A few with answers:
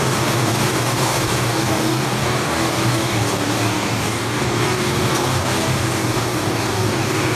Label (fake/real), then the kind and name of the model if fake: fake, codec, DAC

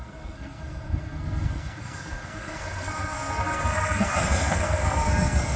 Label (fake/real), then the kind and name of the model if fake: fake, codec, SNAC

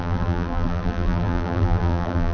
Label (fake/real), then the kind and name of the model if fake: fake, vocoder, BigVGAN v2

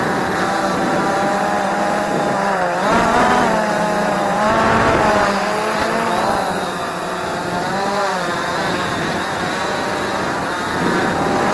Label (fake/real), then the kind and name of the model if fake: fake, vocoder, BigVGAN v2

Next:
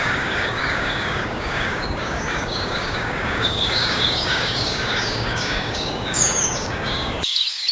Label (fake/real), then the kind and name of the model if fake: fake, codec, DAC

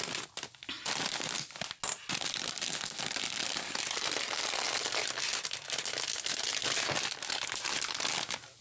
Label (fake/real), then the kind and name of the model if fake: real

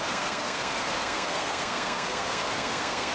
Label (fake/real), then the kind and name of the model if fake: fake, codec, SNAC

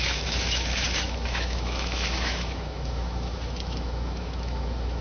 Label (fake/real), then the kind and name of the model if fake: fake, autoencoder, DAC-VAE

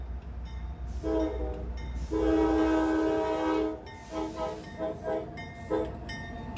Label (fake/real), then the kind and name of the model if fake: real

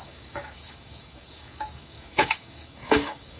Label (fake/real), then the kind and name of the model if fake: fake, codec, DAC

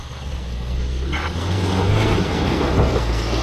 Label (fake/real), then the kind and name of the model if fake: fake, codec, SNAC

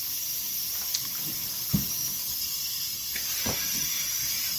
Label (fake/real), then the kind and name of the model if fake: fake, vocoder, BigVGAN v2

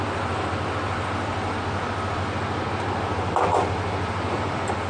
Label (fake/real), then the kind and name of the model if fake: real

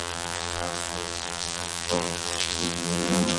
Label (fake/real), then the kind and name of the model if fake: fake, vocoder, BigVGAN v2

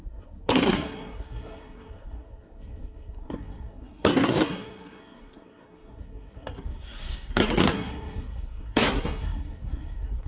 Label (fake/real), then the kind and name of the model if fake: fake, codec, SNAC